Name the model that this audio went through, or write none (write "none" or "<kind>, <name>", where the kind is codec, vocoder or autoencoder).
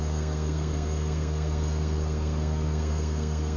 codec, SNAC